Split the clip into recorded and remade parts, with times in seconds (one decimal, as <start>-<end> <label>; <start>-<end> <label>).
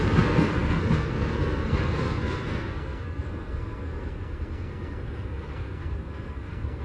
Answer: 0.0-6.8 remade